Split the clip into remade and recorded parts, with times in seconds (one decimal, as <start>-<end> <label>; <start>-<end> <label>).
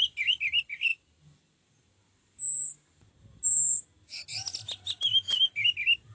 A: 0.0-6.1 recorded